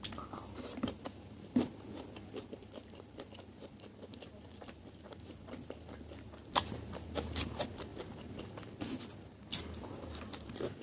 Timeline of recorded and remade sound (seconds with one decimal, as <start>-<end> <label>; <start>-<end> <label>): 0.0-10.8 recorded